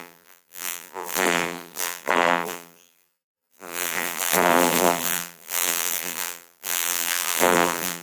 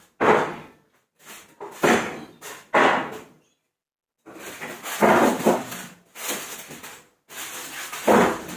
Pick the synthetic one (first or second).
first